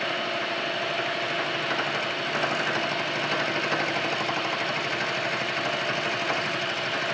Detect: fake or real real